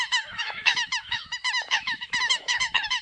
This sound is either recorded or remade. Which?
remade